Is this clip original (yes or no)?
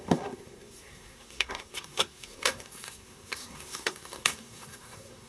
no